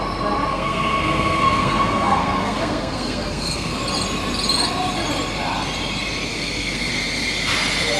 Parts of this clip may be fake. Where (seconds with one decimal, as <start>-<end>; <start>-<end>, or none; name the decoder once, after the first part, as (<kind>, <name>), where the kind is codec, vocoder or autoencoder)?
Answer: 0.5-3.8 (codec, SNAC); 6.3-6.9